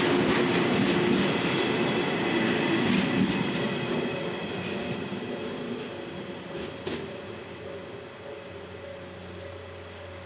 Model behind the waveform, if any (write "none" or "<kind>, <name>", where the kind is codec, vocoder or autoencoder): none